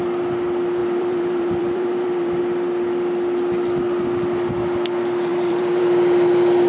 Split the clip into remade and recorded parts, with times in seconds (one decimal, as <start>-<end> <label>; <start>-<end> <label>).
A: 0.0-0.8 recorded; 0.8-2.4 remade; 2.4-5.3 recorded; 5.3-5.8 remade; 5.8-6.7 recorded